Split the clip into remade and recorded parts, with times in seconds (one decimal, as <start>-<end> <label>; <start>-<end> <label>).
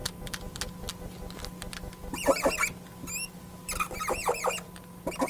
0.0-5.3 recorded